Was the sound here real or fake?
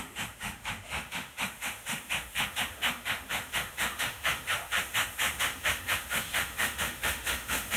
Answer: fake